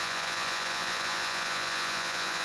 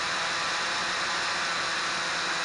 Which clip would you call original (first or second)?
second